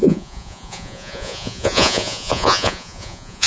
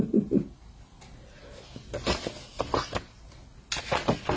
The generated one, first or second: first